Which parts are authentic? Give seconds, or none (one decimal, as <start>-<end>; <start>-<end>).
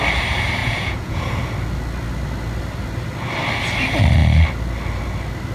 0.0-0.6; 1.3-5.5